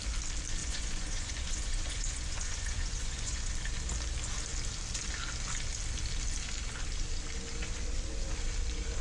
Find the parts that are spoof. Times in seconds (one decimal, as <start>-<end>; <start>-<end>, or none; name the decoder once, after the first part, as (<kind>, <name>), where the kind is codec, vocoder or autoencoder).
0.6-3.5 (vocoder, Vocos)